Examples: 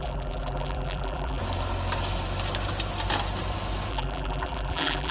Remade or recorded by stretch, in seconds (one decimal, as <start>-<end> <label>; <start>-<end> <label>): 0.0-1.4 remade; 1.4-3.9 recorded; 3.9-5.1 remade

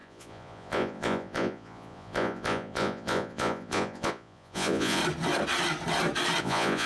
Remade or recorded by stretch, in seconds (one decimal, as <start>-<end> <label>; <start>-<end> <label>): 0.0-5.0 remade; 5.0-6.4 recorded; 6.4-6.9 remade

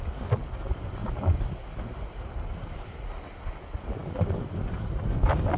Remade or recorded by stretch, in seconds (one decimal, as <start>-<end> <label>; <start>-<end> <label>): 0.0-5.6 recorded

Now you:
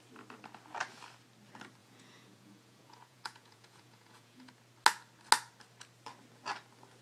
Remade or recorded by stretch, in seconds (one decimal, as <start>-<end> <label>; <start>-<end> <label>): 0.0-1.8 recorded; 1.8-4.5 remade; 4.5-7.0 recorded

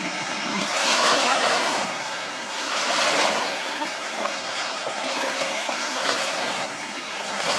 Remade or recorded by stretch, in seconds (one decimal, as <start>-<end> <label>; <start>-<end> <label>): 0.0-2.8 remade; 2.8-3.3 recorded; 3.3-7.6 remade